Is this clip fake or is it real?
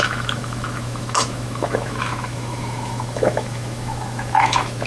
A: fake